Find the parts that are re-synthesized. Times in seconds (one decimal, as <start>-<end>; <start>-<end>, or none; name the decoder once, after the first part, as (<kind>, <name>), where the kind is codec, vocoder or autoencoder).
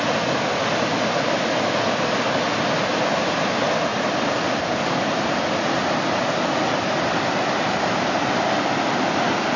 none